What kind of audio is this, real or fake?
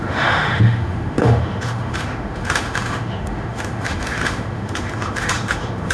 fake